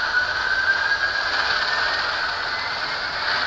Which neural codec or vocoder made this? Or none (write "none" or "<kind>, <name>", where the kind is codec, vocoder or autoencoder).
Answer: none